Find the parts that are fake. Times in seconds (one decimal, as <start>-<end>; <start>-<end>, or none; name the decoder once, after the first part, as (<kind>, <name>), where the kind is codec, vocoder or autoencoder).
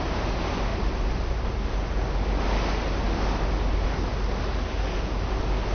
0.7-1.5 (vocoder, BigVGAN v2)